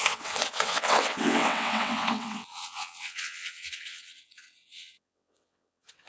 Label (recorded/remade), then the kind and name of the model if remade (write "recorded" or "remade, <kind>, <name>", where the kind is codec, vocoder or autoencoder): remade, vocoder, WaveNeXt